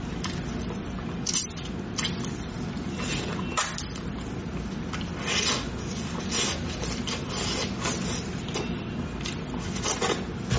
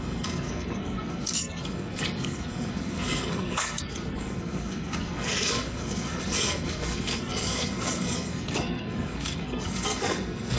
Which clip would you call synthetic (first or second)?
second